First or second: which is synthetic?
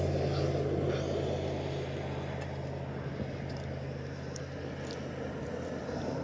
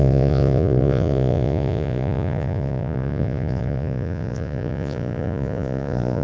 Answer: second